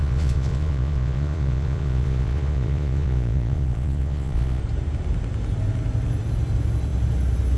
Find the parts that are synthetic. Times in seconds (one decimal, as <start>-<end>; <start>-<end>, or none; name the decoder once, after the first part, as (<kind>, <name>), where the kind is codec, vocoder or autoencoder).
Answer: 0.0-4.6 (vocoder, Vocos)